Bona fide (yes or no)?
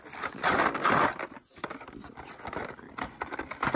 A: yes